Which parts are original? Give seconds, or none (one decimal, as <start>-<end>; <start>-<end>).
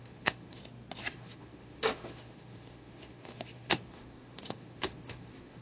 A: 0.6-1.1